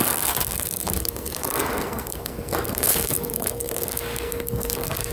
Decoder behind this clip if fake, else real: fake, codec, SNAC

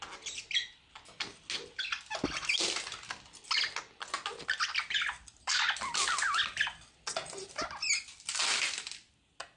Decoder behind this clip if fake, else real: real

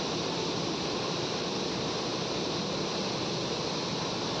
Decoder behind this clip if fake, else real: real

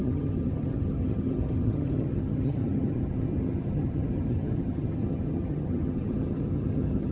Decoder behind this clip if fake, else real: fake, vocoder, HiFi-GAN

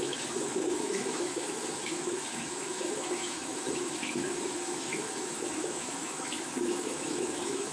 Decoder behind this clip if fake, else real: fake, autoencoder, DAC-VAE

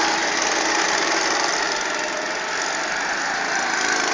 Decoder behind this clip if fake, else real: real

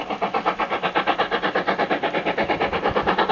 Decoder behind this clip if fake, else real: real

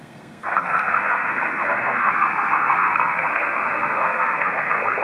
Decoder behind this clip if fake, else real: fake, codec, SNAC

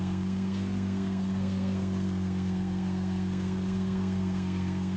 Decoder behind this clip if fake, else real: fake, codec, SNAC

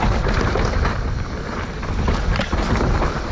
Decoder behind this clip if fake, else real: real